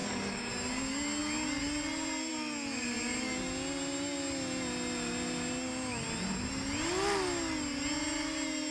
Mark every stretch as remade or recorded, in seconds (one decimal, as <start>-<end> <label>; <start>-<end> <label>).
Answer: 0.0-0.5 remade; 0.5-8.7 recorded